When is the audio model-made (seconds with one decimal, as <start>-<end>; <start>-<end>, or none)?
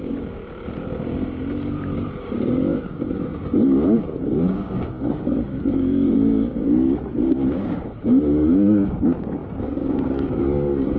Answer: 0.0-0.4; 2.2-11.0